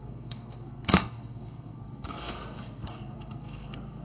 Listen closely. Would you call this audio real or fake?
fake